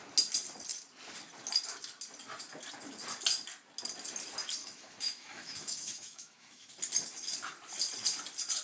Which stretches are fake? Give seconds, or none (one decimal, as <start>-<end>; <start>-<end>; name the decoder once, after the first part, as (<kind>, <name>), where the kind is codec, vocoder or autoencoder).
4.6-6.7 (autoencoder, DAC-VAE)